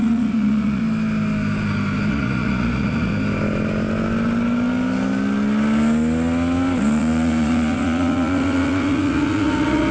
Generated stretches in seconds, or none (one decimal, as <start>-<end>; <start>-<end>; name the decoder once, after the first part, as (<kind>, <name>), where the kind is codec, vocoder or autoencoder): 0.0-0.8 (vocoder, Vocos); 2.1-3.1; 6.8-9.9